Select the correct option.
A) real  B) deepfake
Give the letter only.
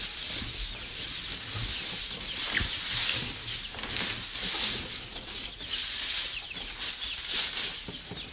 A